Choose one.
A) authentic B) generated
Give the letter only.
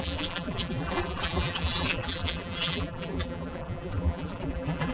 B